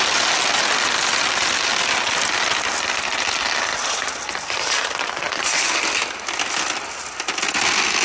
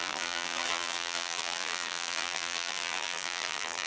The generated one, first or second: second